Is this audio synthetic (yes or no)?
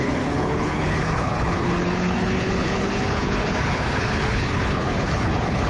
yes